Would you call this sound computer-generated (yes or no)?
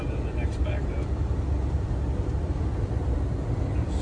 no